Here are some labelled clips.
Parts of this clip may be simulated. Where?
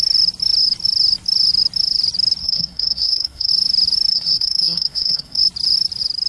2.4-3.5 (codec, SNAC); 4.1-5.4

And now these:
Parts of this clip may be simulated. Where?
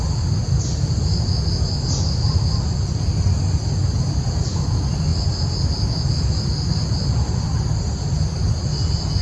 none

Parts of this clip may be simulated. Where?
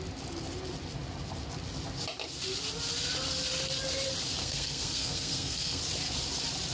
4.4-5.8 (codec, SNAC)